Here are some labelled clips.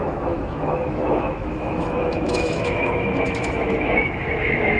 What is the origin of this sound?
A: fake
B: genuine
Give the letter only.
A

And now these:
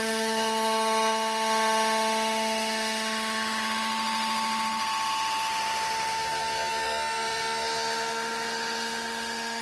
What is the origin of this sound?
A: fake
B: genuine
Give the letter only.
A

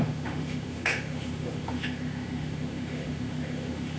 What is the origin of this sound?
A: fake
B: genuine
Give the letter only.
A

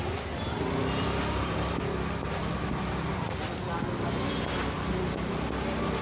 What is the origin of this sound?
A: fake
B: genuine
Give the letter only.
B